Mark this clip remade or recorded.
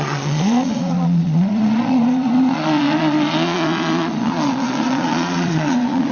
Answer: remade